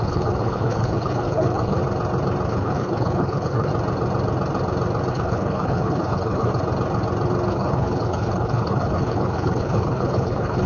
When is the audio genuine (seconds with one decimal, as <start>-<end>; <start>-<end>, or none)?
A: 1.8-2.5; 3.7-5.1; 6.5-7.5

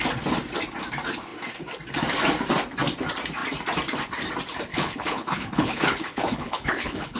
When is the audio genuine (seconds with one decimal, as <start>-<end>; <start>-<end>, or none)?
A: 0.0-4.7

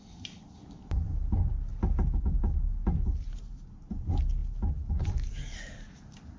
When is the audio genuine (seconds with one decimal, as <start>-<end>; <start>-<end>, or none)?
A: 0.0-6.4

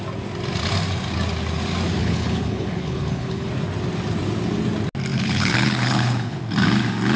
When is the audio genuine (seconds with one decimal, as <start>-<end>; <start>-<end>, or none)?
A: 0.0-2.0; 3.5-5.1; 6.4-7.2

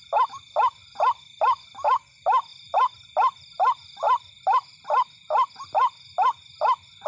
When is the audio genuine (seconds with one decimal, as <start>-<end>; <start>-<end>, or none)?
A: 0.0-7.1